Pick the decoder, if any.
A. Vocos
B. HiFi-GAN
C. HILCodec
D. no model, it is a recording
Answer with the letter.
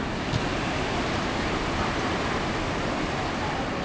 D